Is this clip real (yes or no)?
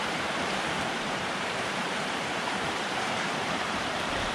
no